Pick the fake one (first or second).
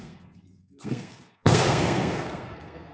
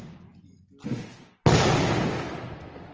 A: first